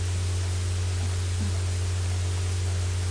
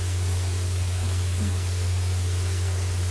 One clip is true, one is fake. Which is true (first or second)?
first